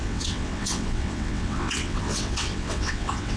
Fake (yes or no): yes